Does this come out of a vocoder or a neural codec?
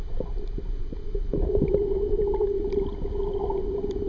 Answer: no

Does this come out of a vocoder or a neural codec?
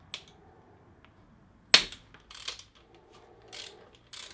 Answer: no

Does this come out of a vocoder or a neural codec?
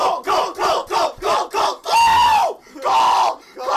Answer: no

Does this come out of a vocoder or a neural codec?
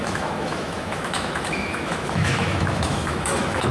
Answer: yes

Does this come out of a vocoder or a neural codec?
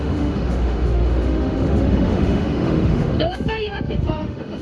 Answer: yes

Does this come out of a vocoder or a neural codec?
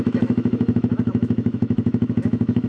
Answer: yes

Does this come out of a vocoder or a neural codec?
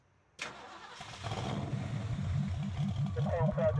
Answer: no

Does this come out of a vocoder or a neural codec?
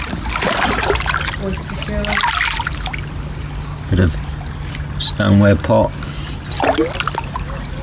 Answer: no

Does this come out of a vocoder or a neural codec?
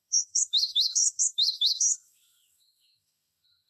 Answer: yes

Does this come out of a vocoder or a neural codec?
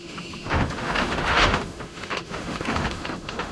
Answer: yes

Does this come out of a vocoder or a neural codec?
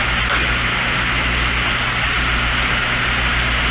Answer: no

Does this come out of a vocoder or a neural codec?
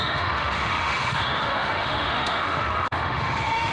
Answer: yes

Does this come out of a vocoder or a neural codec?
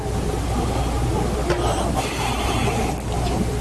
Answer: no